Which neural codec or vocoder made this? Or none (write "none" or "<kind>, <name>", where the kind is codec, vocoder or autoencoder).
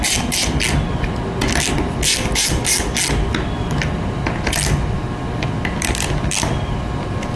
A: none